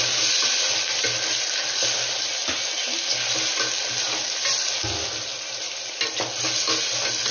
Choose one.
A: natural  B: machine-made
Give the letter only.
A